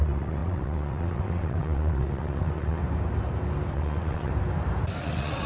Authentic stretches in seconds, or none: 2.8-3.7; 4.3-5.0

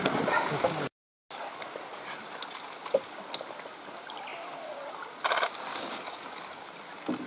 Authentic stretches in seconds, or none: 0.0-5.7; 6.7-7.3

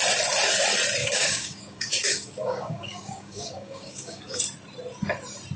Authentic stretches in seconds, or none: 0.0-1.0; 4.4-5.6

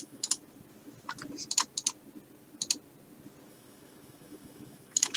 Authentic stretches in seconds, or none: 0.4-3.5

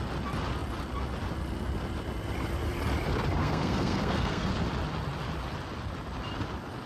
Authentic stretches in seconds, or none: 0.0-3.4; 4.5-6.9

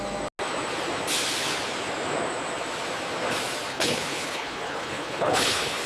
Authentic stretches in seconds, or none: 0.0-3.7